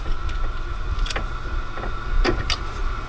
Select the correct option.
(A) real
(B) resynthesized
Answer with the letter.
A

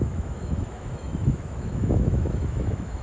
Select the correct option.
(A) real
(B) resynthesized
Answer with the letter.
B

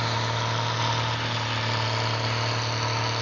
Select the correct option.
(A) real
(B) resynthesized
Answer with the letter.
A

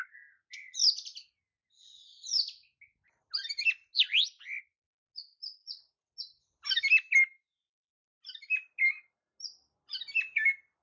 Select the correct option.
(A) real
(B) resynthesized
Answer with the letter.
A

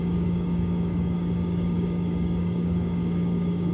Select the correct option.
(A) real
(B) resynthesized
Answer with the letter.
B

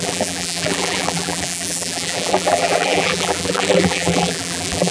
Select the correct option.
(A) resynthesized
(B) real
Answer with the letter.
A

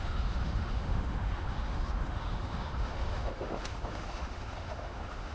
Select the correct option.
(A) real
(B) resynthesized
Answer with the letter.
B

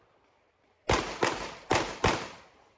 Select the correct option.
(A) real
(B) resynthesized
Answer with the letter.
A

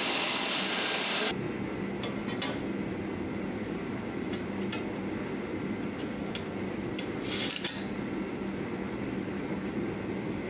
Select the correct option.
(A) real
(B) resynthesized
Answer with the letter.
A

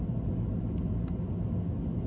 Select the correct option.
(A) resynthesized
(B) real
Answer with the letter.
B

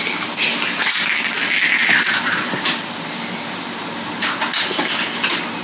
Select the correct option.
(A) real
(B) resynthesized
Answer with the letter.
A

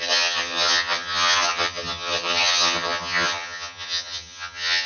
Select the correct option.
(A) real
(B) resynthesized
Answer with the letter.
B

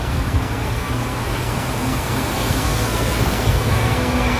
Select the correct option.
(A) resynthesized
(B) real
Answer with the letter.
A